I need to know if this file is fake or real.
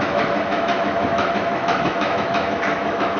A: fake